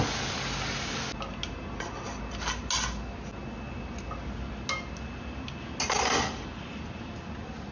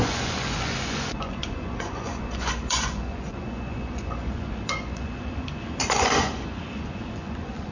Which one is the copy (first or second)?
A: second